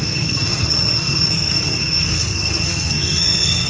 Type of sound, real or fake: fake